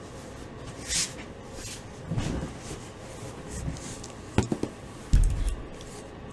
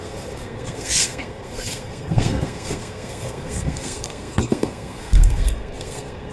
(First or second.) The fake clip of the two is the second